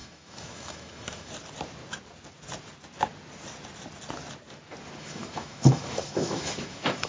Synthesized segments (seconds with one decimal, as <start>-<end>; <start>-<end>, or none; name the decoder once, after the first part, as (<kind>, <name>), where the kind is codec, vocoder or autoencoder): 0.0-1.3 (autoencoder, DAC-VAE); 5.0-7.1